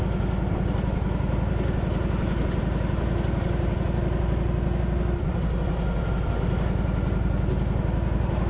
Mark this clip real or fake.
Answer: real